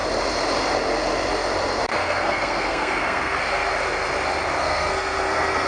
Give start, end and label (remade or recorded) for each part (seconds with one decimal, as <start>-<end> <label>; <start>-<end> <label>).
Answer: 0.0-1.9 recorded; 1.9-3.7 remade; 3.7-4.6 recorded; 4.6-5.7 remade